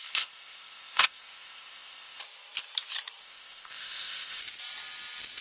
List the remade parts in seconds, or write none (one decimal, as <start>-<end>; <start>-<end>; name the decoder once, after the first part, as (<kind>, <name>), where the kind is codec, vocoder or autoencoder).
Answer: 0.0-2.2 (codec, ZipCodec); 3.2-4.4